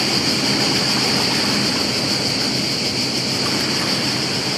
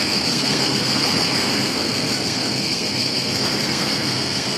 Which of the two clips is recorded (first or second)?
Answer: first